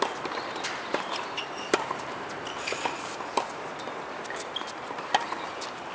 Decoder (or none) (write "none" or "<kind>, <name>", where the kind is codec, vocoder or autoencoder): none